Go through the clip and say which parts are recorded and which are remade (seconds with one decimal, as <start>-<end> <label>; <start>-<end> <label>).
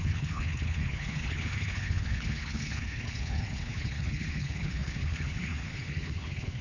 0.0-6.6 remade